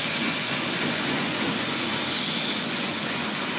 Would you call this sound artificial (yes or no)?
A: yes